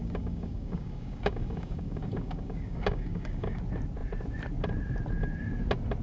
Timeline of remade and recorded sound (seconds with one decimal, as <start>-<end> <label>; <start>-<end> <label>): 0.0-3.6 remade; 3.6-6.0 recorded